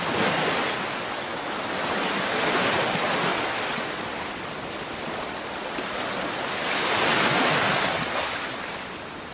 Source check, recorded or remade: recorded